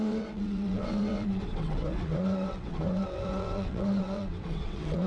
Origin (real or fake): fake